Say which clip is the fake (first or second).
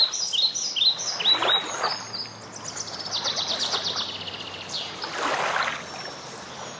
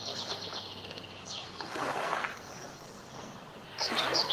second